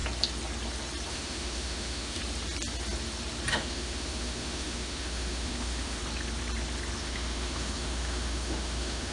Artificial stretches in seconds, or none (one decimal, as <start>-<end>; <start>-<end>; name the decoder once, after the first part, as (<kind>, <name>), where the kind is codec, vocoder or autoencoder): 1.1-2.2 (autoencoder, DAC-VAE); 3.5-6.0; 7.0-9.1